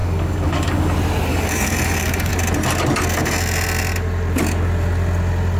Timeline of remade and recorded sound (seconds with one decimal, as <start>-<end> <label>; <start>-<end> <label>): 0.0-0.9 remade; 0.9-1.3 recorded; 1.3-2.3 remade; 2.3-5.6 recorded